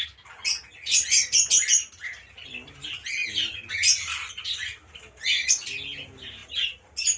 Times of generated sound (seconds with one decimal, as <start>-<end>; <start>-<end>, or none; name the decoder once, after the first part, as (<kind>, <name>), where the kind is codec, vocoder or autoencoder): none